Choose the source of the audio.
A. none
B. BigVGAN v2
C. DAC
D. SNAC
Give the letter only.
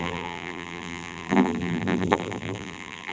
B